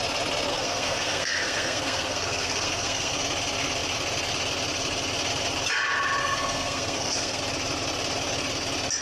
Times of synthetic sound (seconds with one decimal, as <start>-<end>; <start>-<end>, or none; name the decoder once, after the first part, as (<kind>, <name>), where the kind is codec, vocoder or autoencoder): 0.5-3.1 (codec, SNAC); 6.2-7.4